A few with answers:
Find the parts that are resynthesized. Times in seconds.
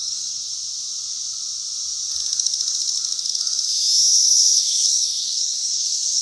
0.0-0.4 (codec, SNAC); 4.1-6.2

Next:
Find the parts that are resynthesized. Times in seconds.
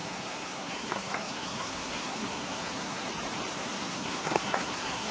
0.0-3.1 (codec, SNAC); 3.5-5.1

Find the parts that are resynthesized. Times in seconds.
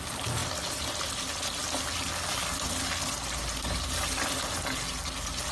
none